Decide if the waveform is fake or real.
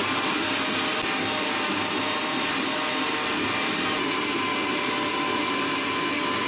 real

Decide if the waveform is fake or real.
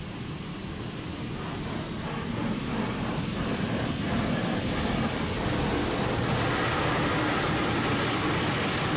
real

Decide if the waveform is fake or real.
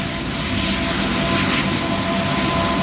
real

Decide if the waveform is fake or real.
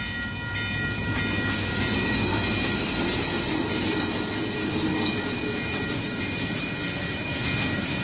real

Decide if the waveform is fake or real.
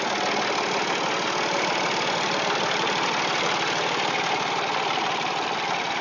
real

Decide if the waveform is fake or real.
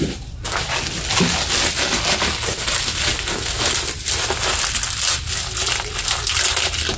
real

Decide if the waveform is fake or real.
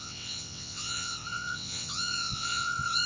fake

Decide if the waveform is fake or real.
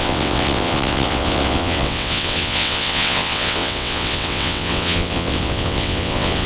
fake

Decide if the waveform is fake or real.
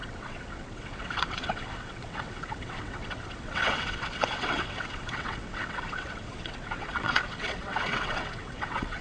fake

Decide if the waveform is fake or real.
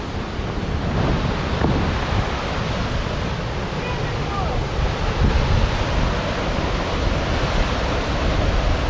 real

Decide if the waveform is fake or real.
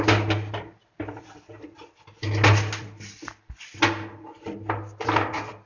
real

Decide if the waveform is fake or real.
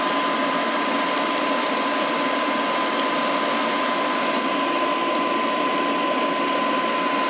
real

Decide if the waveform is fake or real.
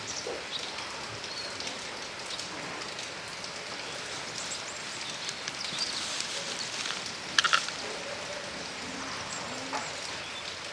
real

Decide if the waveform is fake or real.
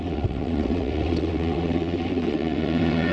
fake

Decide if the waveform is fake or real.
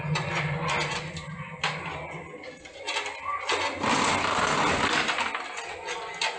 real